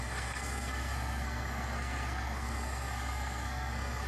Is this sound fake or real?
fake